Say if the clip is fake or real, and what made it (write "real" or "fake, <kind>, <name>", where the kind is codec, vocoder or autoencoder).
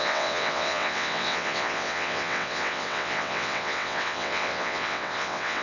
fake, vocoder, WaveNeXt